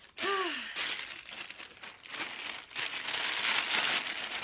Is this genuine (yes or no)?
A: yes